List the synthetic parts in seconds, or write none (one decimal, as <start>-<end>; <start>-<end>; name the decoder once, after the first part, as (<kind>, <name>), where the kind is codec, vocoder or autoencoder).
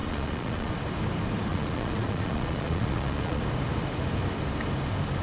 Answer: 0.0-0.7 (vocoder, Vocos); 1.5-3.4